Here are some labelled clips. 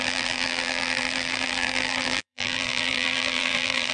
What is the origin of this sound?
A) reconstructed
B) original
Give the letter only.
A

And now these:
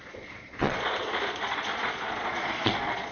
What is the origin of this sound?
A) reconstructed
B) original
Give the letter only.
A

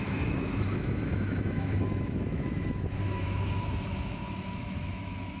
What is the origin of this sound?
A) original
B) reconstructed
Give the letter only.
B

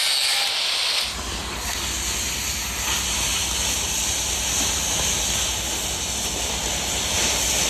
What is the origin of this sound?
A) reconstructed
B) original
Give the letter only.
B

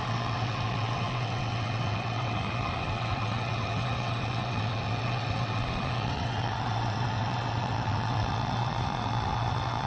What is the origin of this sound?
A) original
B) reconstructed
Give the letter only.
B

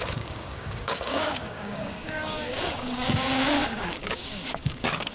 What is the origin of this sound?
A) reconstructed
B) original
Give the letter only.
A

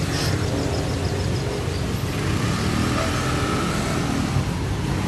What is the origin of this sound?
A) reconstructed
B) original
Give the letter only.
B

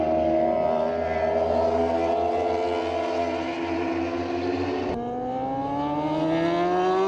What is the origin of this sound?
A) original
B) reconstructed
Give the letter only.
A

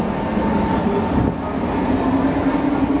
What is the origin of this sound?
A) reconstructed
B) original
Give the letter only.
B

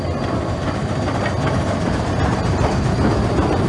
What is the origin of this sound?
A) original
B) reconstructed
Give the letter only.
A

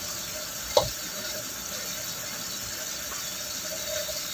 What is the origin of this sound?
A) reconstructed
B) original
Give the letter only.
B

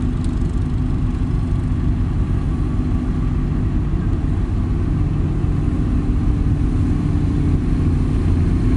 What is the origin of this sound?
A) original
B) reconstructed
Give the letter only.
A